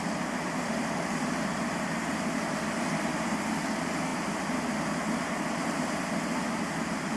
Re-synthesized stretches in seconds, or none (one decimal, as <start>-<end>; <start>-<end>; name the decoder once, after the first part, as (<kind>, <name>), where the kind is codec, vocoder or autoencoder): 1.5-3.5 (vocoder, BigVGAN v2)